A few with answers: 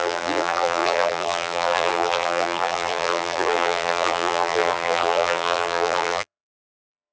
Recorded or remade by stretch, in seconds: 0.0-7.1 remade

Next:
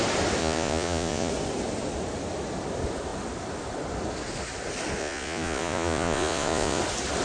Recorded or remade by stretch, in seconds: 0.0-0.4 recorded; 0.4-1.3 remade; 1.3-5.0 recorded; 5.0-6.8 remade; 6.8-7.2 recorded

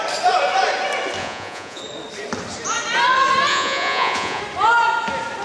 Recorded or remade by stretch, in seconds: 0.0-1.2 recorded; 1.2-1.8 remade; 1.8-3.5 recorded; 3.5-4.4 remade; 4.4-5.4 recorded

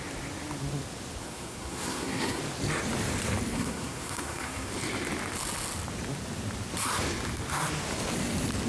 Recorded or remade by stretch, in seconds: 0.0-1.2 recorded; 1.2-2.4 remade; 2.4-3.5 recorded; 3.5-4.7 remade; 4.7-8.7 recorded

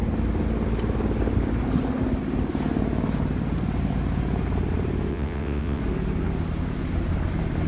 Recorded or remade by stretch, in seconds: 0.0-5.1 recorded; 5.1-5.8 remade; 5.8-7.7 recorded

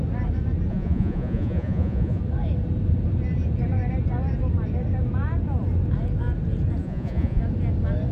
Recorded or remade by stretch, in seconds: 0.0-0.7 recorded; 0.7-2.2 remade; 2.2-6.8 recorded; 6.8-7.4 remade; 7.4-8.1 recorded

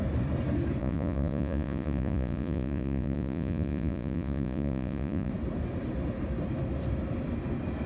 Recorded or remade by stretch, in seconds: 0.0-0.8 recorded; 0.8-5.3 remade; 5.3-7.9 recorded